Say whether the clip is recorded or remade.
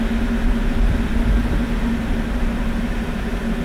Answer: recorded